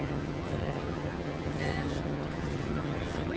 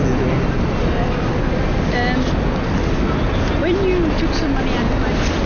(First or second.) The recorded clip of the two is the second